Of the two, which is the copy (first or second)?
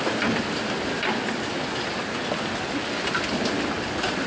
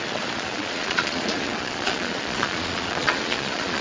second